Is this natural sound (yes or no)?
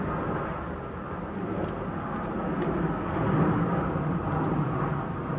yes